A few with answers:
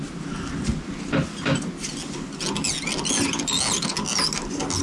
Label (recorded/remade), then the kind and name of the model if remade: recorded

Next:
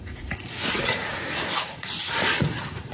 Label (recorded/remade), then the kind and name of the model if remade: remade, vocoder, Vocos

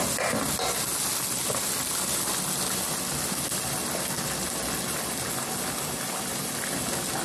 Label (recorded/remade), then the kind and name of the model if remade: recorded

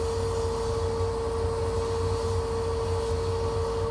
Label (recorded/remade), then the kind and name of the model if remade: recorded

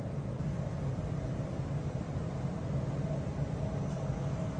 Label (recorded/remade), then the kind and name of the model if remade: recorded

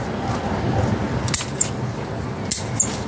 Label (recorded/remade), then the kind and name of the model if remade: recorded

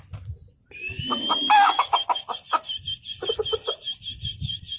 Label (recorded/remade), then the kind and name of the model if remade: recorded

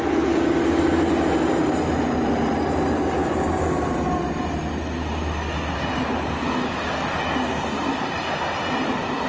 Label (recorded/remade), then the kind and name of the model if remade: recorded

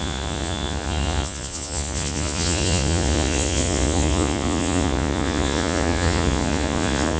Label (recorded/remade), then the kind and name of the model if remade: remade, vocoder, Vocos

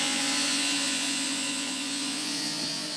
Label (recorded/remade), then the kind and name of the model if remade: remade, vocoder, Vocos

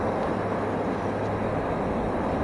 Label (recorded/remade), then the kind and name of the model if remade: recorded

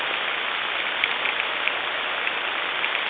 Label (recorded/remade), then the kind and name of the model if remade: recorded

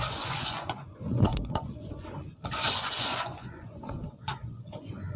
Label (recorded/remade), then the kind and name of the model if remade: remade, vocoder, Vocos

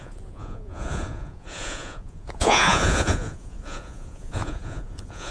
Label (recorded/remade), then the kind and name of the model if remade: remade, vocoder, Vocos